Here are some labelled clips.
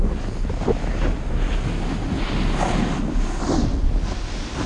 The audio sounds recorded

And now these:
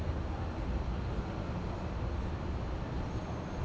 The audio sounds recorded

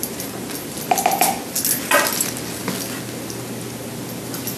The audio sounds recorded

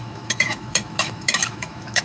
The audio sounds remade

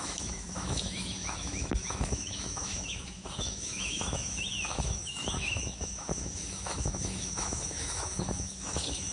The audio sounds remade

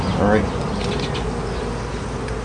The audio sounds recorded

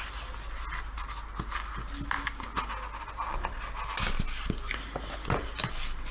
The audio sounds recorded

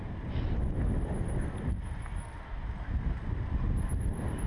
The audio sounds recorded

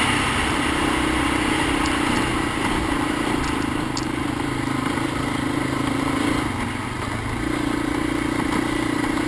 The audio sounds recorded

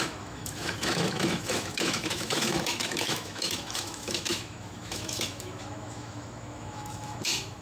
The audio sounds remade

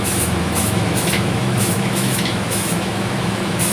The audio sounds remade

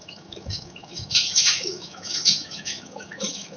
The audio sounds remade